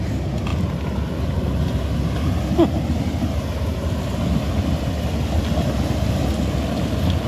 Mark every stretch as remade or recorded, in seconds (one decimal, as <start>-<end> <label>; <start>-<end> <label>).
0.0-7.3 recorded